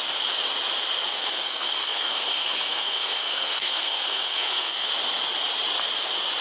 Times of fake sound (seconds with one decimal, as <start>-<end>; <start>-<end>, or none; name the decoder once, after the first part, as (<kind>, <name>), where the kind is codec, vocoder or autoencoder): 1.1-4.9 (codec, SNAC)